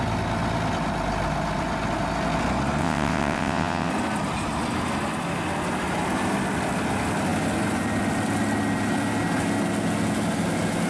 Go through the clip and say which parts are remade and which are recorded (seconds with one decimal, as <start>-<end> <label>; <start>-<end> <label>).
0.0-2.8 recorded; 2.8-3.9 remade; 3.9-10.9 recorded